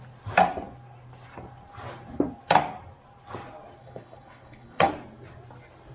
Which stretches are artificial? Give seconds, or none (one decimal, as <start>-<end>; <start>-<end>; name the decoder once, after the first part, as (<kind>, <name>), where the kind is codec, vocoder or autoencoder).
3.8-4.9 (codec, HILCodec)